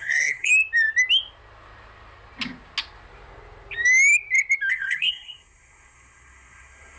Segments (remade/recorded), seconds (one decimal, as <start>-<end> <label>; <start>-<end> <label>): 0.0-0.5 remade; 0.5-4.7 recorded; 4.7-7.0 remade